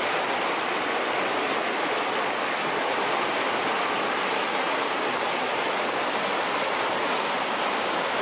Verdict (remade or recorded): recorded